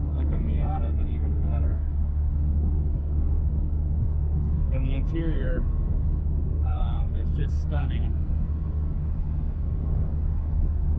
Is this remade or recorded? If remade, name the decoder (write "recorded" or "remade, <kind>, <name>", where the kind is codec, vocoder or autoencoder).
remade, codec, SNAC